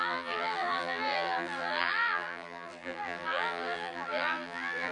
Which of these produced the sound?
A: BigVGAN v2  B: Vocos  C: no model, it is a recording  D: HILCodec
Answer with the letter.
A